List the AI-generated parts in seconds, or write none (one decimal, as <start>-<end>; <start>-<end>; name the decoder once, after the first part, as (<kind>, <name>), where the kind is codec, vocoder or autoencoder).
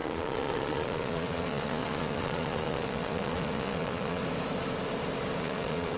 0.0-4.2 (vocoder, Vocos); 5.4-6.0